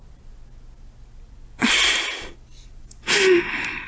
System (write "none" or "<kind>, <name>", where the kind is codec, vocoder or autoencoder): none